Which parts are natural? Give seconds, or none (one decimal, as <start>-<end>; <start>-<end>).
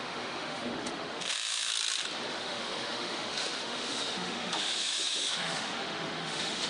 1.7-2.3